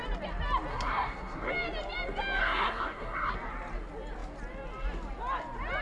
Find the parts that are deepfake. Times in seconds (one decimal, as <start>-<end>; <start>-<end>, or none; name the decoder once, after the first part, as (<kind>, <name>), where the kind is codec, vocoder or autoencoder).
0.7-1.5 (codec, SNAC); 2.4-3.3